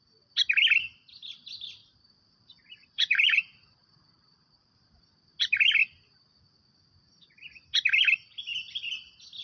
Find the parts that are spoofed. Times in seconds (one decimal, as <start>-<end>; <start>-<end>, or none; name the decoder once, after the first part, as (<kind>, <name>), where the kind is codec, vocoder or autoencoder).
1.8-5.0 (vocoder, BigVGAN v2)